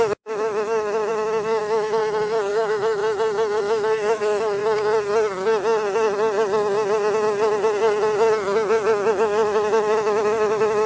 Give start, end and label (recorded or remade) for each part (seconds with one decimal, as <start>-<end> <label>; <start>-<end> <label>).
0.0-2.0 remade; 2.0-2.5 recorded; 2.5-3.0 remade; 3.0-3.6 recorded; 3.6-4.6 remade; 4.6-9.1 recorded; 9.1-10.9 remade